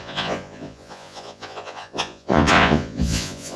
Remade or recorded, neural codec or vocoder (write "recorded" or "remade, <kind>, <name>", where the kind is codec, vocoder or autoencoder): remade, vocoder, Vocos